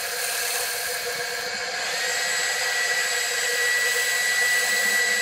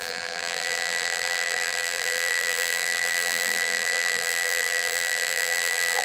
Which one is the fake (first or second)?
second